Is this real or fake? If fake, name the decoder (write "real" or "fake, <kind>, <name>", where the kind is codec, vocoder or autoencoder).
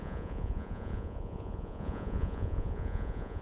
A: fake, vocoder, Vocos